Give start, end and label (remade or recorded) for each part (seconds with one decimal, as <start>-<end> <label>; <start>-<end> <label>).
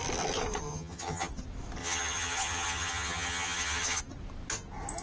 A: 0.0-0.7 recorded; 0.7-1.3 remade; 1.3-1.8 recorded; 1.8-4.0 remade; 4.0-5.0 recorded